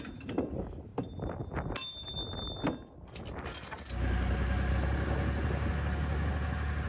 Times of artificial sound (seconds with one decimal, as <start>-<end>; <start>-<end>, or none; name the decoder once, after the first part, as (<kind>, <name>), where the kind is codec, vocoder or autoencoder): none